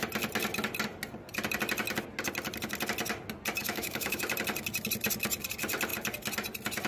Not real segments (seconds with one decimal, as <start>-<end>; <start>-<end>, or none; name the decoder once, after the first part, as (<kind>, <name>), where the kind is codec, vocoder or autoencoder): 3.6-4.2 (autoencoder, DAC-VAE)